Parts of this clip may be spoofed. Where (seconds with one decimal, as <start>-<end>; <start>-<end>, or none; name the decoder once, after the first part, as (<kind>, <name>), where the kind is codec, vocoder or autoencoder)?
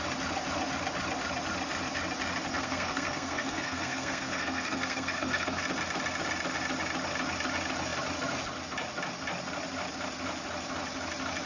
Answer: 2.5-5.6 (codec, SNAC)